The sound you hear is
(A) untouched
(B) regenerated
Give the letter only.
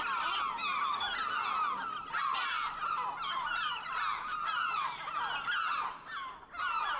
A